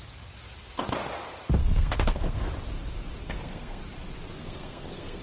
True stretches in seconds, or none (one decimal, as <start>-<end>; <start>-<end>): 0.0-1.6; 2.5-3.2; 3.8-4.4